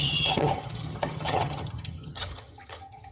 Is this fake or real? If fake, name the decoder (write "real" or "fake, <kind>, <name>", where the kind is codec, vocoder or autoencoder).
fake, vocoder, HiFi-GAN